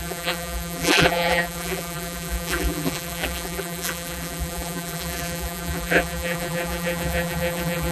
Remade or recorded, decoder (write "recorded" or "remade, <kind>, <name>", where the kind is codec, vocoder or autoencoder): remade, vocoder, BigVGAN v2